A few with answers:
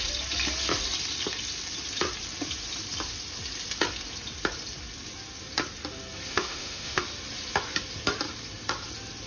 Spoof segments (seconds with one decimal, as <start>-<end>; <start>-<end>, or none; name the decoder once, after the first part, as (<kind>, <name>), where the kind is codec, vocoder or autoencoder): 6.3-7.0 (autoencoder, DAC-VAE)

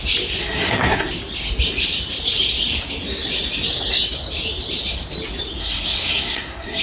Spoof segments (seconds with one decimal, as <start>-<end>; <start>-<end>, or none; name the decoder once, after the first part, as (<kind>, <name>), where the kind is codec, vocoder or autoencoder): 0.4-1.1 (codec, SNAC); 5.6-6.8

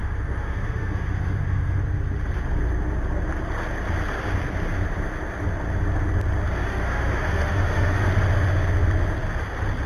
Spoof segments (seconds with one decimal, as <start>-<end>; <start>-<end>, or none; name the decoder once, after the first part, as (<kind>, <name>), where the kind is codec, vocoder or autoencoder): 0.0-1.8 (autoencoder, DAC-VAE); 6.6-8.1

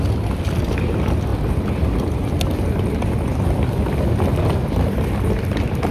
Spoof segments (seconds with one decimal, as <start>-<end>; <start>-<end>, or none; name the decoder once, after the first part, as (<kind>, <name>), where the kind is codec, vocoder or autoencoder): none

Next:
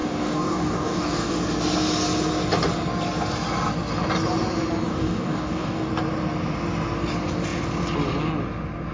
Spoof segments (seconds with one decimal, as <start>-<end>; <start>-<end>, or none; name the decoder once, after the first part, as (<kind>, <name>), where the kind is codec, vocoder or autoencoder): 0.0-1.3 (codec, DAC); 4.9-5.9

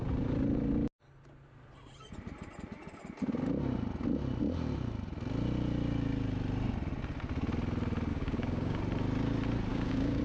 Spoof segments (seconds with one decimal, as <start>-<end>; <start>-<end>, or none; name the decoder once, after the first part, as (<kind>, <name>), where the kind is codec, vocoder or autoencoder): 8.1-8.8 (codec, DAC); 9.7-10.2